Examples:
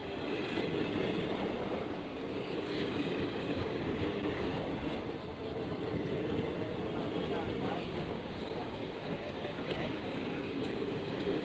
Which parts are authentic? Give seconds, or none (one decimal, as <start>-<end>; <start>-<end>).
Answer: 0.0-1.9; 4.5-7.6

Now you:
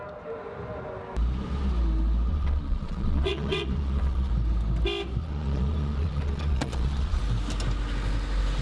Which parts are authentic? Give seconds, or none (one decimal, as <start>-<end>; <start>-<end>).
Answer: 0.0-2.3; 4.3-5.2; 7.2-8.6

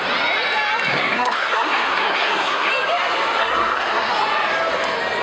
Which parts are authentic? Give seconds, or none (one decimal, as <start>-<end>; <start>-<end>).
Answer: 0.0-0.9; 2.7-3.4; 4.1-5.2

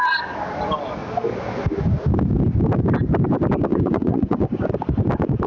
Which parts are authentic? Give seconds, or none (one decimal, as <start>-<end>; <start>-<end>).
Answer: 0.0-3.7; 4.4-5.5

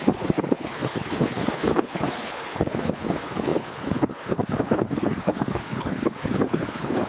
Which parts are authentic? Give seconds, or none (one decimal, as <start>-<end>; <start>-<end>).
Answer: none

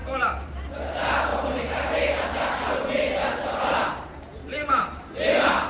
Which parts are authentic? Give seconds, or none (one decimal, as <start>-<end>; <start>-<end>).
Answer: none

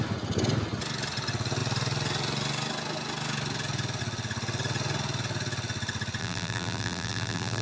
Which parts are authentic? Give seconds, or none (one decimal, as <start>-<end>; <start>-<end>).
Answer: 0.0-6.2